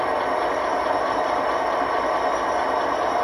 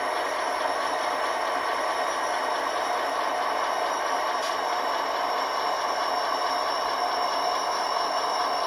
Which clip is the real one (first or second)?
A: second